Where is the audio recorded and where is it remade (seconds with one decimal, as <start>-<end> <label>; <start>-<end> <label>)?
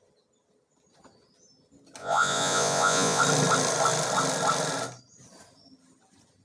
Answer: 0.0-2.0 recorded; 2.0-3.2 remade; 3.2-6.4 recorded